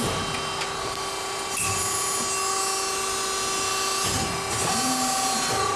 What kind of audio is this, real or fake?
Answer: real